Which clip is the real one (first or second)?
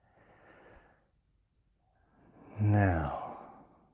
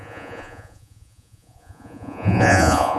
first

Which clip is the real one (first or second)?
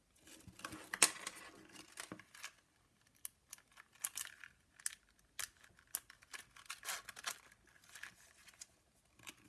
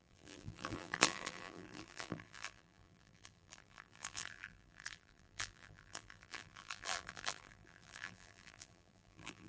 first